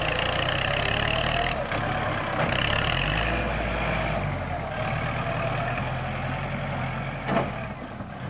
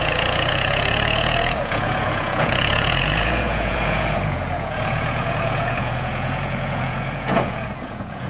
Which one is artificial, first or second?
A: second